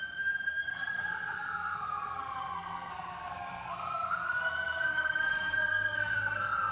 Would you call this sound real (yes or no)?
no